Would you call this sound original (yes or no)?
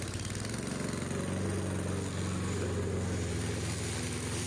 yes